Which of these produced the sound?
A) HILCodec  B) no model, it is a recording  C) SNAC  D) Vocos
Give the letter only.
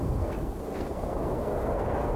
C